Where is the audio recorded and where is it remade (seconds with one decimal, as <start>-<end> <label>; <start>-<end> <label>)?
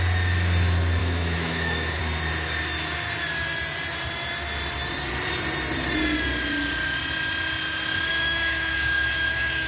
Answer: 0.0-1.0 recorded; 1.0-2.0 remade; 2.0-8.1 recorded; 8.1-9.7 remade